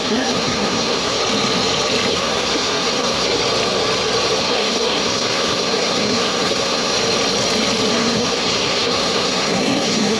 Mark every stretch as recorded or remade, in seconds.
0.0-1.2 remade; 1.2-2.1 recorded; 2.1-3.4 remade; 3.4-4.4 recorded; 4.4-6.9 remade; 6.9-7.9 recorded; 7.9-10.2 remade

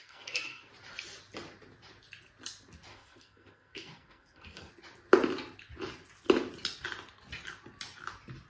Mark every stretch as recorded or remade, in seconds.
0.0-0.7 remade; 0.7-2.9 recorded; 2.9-4.7 remade; 4.7-8.5 recorded